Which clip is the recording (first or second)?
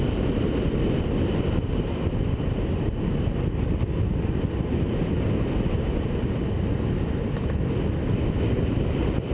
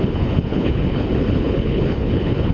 first